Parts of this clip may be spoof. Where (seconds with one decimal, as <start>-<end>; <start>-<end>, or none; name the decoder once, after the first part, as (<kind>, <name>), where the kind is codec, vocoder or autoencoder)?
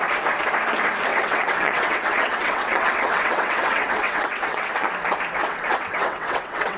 1.1-4.9 (vocoder, WaveNeXt); 5.4-6.8